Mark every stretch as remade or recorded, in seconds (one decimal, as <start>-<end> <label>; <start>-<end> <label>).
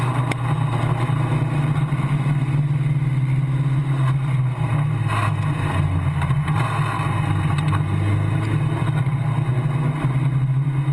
0.0-10.9 recorded